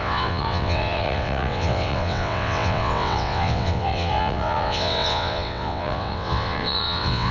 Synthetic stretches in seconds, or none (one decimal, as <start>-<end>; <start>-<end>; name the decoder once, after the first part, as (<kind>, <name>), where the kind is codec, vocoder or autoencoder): 0.0-7.3 (vocoder, WaveNeXt)

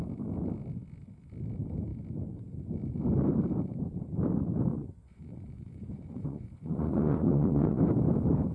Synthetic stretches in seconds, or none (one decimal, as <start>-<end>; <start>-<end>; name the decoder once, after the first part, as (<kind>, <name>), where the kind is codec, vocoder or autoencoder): 4.7-7.8 (vocoder, Vocos)